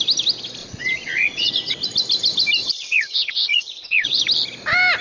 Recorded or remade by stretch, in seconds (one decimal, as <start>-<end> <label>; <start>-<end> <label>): 0.0-0.6 recorded; 0.6-1.5 remade; 1.5-2.6 recorded; 2.6-4.2 remade; 4.2-5.0 recorded

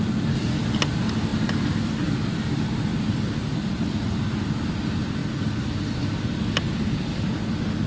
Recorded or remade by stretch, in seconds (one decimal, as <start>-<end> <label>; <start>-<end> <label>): 0.0-2.9 recorded; 2.9-4.2 remade; 4.2-7.9 recorded

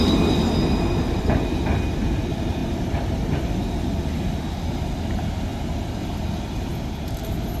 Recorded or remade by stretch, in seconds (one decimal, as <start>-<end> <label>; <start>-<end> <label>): 0.0-2.6 recorded; 2.6-3.5 remade; 3.5-7.6 recorded

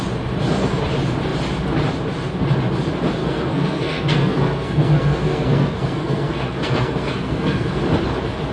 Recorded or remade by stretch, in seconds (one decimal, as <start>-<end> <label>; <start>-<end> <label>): 0.0-3.2 recorded; 3.2-7.8 remade; 7.8-8.5 recorded